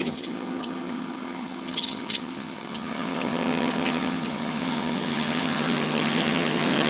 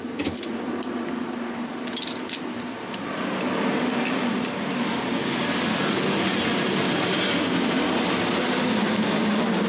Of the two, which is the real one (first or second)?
second